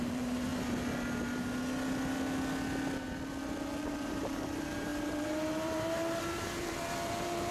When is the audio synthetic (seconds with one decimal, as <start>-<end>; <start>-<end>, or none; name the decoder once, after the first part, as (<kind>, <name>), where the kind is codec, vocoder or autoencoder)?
0.0-0.5 (vocoder, BigVGAN v2); 3.4-7.5